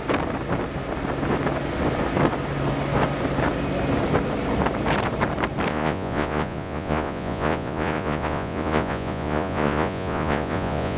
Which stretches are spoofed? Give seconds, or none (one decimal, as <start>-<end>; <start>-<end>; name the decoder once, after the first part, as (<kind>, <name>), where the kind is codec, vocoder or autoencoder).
5.7-11.0 (vocoder, Vocos)